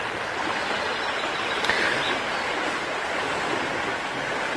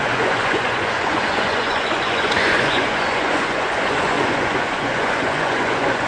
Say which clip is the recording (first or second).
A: first